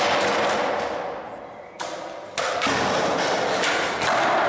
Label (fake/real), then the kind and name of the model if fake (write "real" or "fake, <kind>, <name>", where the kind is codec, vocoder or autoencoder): real